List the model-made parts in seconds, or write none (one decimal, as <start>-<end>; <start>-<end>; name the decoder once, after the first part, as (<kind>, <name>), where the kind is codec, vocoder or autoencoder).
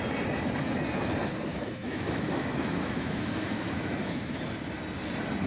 1.5-4.4 (autoencoder, DAC-VAE)